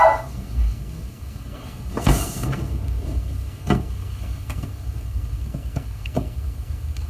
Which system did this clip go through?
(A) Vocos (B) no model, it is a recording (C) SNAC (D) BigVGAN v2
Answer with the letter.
C